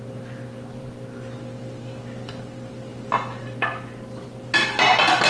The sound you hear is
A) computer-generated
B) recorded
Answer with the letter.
B